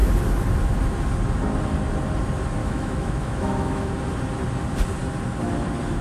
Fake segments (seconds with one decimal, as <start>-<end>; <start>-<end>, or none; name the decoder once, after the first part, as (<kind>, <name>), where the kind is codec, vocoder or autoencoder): 2.6-3.9 (autoencoder, DAC-VAE)